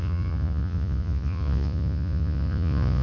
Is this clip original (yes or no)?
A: no